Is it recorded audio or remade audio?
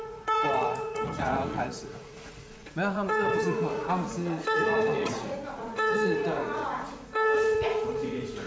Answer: remade